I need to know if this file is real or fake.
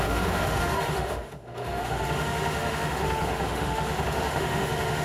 fake